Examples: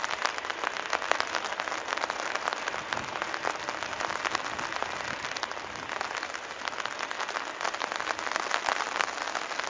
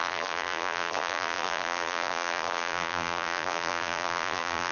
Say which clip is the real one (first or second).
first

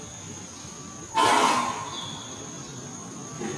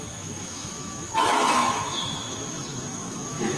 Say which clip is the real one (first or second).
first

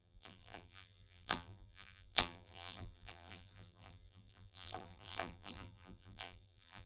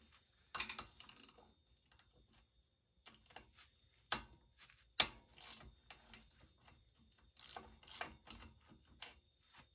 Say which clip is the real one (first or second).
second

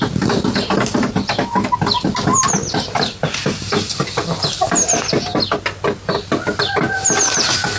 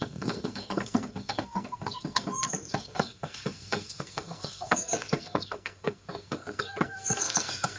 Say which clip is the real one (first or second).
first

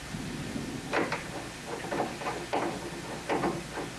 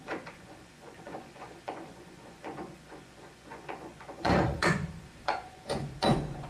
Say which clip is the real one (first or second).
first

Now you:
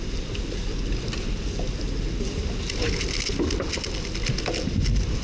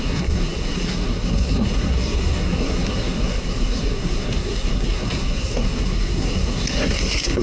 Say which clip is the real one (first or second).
first